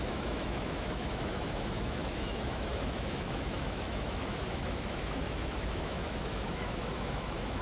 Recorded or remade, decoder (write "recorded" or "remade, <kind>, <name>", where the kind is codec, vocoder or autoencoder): remade, autoencoder, DAC-VAE